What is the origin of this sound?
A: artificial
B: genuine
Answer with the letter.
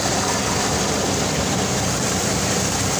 A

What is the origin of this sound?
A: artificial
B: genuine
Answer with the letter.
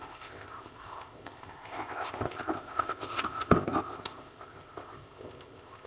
A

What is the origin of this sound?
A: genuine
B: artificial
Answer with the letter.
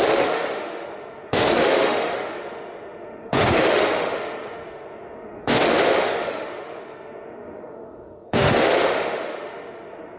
B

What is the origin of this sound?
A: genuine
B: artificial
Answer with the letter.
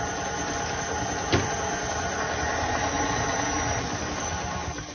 A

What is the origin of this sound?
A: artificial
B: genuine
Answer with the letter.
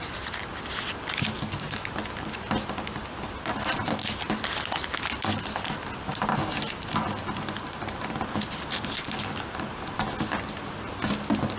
B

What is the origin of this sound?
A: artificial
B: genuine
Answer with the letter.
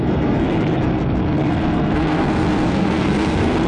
A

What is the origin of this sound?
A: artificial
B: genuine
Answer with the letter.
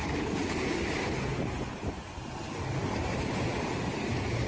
B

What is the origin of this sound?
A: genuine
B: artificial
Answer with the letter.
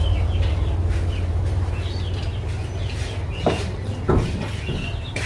A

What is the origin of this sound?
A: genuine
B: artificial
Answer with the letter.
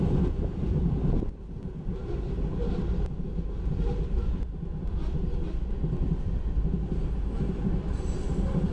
A